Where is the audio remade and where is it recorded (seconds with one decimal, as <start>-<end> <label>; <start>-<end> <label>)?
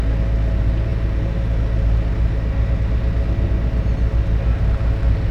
0.0-5.3 recorded